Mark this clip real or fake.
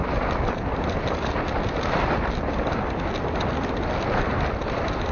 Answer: real